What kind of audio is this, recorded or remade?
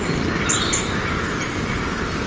recorded